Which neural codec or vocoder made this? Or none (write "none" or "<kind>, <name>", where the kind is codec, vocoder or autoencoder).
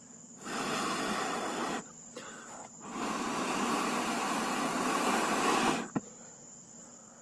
none